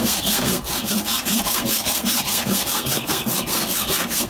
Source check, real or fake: fake